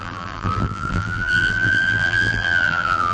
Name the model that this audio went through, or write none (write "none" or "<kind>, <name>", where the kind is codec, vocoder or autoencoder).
vocoder, BigVGAN v2